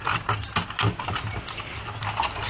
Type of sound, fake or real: real